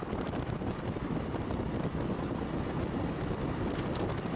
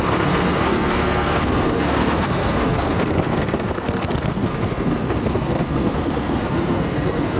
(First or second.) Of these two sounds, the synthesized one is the second